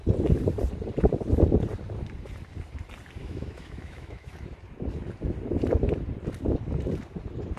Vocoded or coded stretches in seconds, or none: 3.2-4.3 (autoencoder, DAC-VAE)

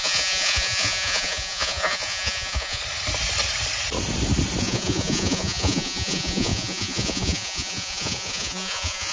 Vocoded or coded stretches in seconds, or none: 0.0-2.8 (vocoder, Vocos); 4.6-9.1

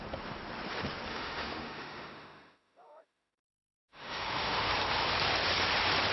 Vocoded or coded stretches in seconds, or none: 1.1-4.7 (autoencoder, DAC-VAE)

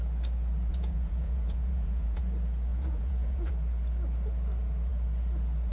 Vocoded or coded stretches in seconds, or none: 0.7-2.2 (vocoder, Vocos); 2.7-3.5

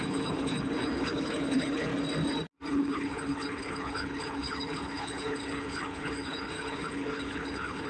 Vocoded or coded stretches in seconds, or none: 0.0-1.9 (codec, HILCodec); 2.7-7.9

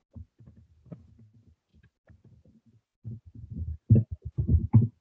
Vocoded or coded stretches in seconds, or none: none